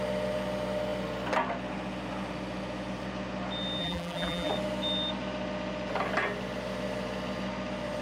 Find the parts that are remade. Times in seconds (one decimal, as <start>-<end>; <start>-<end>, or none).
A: 3.8-4.5